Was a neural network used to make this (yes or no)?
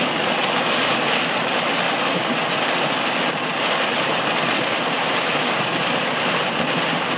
no